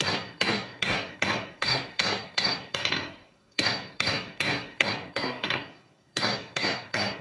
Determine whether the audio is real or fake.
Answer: fake